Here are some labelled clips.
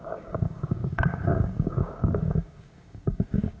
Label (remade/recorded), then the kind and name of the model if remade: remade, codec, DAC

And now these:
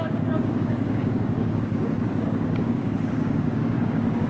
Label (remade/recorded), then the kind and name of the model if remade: remade, codec, DAC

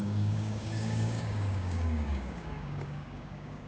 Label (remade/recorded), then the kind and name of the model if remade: remade, codec, DAC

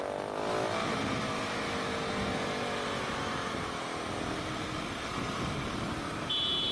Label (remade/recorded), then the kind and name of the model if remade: recorded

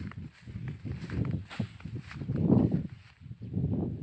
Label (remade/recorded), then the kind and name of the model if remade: recorded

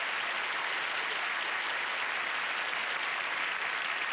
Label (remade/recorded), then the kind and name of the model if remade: recorded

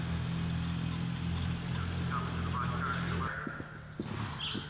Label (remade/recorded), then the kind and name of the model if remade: recorded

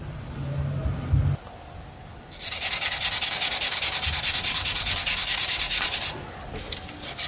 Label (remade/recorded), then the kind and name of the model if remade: recorded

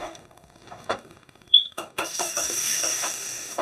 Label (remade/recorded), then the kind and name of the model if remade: remade, codec, DAC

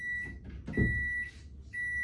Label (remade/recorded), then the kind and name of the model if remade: recorded